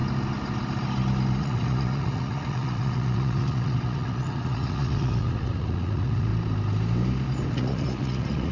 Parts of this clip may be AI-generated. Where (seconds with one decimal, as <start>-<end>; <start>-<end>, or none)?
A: 1.4-6.3; 7.5-8.5

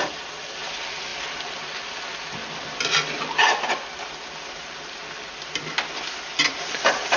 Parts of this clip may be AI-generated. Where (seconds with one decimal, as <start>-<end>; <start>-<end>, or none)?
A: none

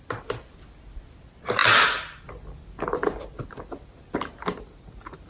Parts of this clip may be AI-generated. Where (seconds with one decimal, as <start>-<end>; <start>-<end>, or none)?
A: none